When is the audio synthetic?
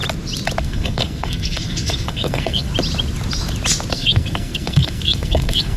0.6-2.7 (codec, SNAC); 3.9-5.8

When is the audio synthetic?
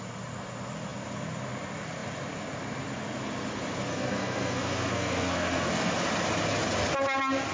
3.9-5.9 (codec, SNAC)